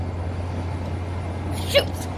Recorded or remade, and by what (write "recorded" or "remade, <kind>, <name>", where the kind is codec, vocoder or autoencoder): recorded